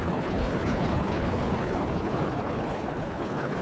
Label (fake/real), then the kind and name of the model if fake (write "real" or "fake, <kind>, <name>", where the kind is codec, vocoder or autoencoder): fake, codec, HILCodec